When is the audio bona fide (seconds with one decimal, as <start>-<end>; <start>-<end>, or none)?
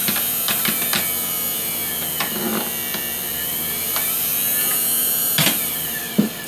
0.0-3.9; 4.3-5.0